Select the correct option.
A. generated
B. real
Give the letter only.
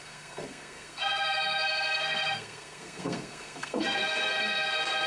A